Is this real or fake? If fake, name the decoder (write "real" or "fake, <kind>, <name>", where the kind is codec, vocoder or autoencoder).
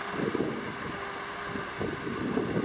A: real